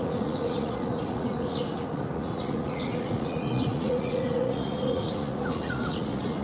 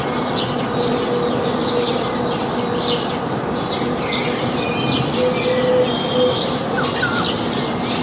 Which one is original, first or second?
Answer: second